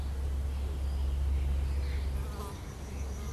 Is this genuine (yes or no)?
yes